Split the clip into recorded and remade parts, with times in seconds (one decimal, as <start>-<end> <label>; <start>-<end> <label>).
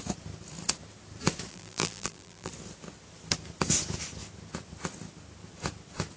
0.0-1.5 recorded; 1.5-2.5 remade; 2.5-6.2 recorded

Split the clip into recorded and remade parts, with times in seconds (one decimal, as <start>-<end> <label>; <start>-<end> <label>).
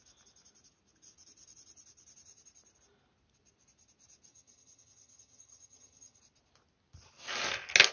0.0-4.3 recorded; 4.3-6.2 remade; 6.2-7.9 recorded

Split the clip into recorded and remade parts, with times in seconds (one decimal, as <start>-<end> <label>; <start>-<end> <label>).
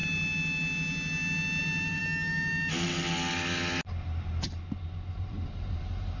0.0-1.6 recorded; 1.6-2.0 remade; 2.0-5.1 recorded; 5.1-6.2 remade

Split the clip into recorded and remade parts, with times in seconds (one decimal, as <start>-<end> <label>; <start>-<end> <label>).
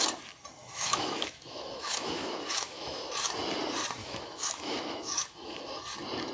0.0-0.6 recorded; 0.6-3.2 remade; 3.2-4.0 recorded; 4.0-5.7 remade; 5.7-6.3 recorded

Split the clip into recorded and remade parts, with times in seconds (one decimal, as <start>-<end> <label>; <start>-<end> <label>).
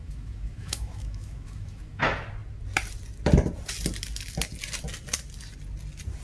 0.0-2.0 remade; 2.0-6.2 recorded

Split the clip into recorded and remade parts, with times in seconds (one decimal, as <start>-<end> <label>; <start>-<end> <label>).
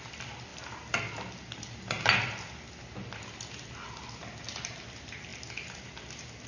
0.0-6.5 recorded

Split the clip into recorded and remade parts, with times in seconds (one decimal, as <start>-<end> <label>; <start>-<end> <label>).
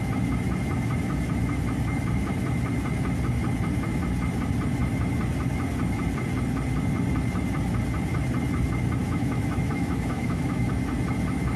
0.0-9.0 recorded; 9.0-10.7 remade; 10.7-11.6 recorded